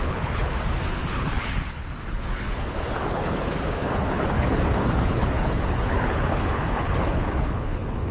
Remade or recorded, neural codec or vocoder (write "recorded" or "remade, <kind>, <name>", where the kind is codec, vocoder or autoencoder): remade, codec, HILCodec